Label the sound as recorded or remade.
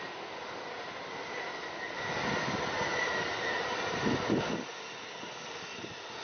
recorded